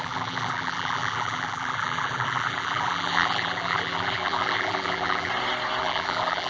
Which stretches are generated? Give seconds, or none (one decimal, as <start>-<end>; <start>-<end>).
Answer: 0.0-5.3; 5.8-6.5